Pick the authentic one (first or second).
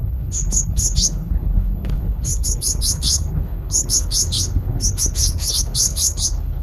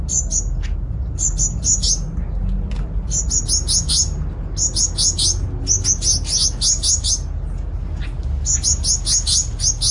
second